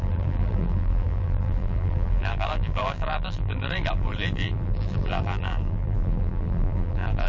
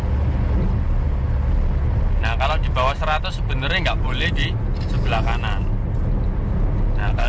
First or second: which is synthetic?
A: first